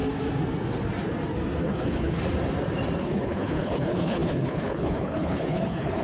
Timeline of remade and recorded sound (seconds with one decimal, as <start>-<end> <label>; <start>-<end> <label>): 0.0-1.6 recorded; 1.6-2.2 remade; 2.2-3.0 recorded; 3.0-6.0 remade